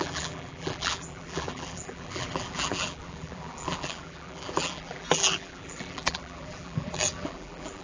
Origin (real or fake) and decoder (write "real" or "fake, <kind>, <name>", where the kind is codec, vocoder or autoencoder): fake, vocoder, BigVGAN v2